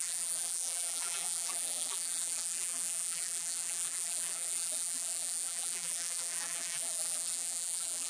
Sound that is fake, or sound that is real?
fake